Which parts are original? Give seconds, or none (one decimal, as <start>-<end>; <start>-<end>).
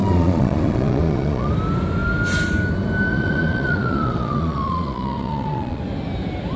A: 1.5-3.1; 5.8-6.6